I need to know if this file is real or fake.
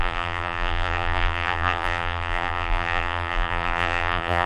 fake